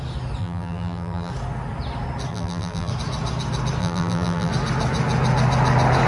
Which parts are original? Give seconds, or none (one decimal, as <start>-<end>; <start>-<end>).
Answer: 0.0-0.4; 1.3-2.3; 2.9-3.8; 4.5-6.1